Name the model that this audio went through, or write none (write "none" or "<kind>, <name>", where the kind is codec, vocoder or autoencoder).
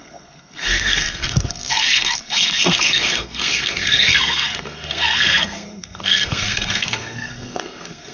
codec, SNAC